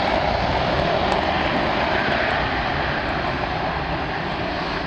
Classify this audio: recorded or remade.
remade